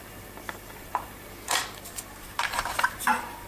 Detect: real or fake fake